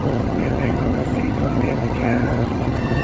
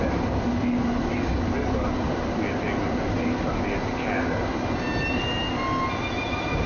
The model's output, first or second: first